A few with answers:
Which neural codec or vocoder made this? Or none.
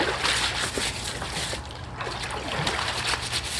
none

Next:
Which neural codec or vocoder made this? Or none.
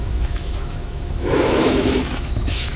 autoencoder, DAC-VAE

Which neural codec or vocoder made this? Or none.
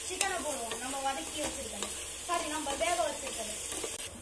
none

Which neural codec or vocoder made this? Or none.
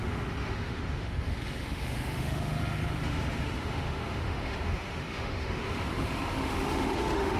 autoencoder, DAC-VAE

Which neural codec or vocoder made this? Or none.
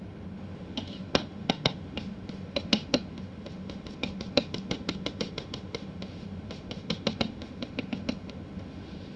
autoencoder, DAC-VAE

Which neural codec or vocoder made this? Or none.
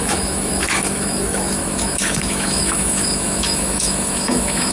autoencoder, DAC-VAE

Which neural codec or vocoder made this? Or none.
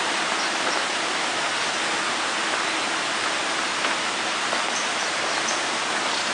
none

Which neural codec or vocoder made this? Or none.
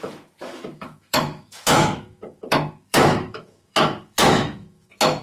autoencoder, DAC-VAE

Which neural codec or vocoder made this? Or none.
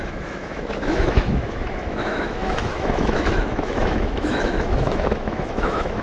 autoencoder, DAC-VAE